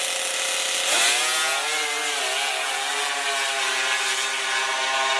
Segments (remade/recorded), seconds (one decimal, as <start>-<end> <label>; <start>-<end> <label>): 0.0-5.2 recorded